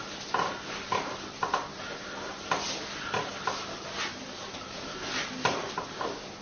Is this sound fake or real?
real